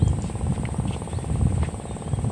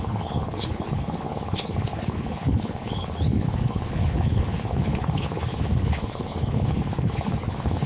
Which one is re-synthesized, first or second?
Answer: second